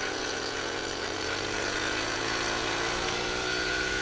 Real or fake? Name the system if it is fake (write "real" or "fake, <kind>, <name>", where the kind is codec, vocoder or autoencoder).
fake, vocoder, Vocos